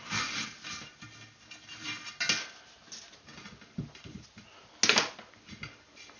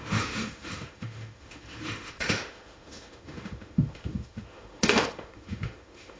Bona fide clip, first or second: first